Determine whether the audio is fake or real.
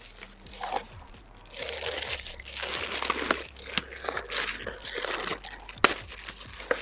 real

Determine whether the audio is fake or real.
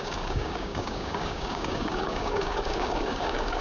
fake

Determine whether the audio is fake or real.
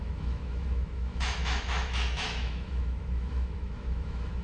fake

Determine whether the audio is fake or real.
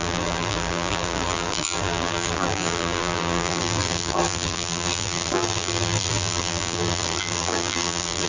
fake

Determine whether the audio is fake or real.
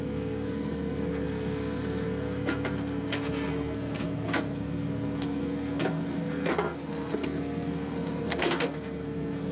fake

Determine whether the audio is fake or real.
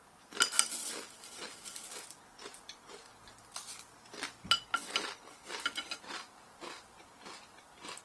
real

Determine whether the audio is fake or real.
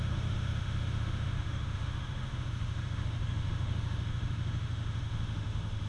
fake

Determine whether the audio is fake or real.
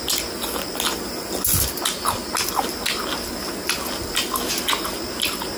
real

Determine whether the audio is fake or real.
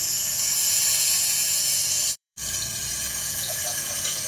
fake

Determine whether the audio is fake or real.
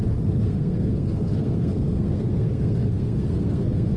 fake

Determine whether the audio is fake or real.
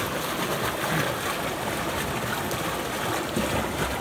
real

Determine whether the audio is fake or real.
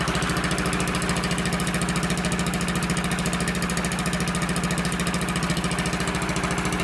real